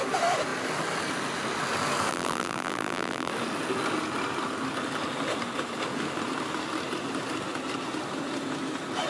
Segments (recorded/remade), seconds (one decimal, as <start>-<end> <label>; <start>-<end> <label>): 0.0-2.1 recorded; 2.1-3.3 remade; 3.3-9.1 recorded